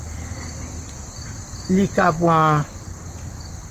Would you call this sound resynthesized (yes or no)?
no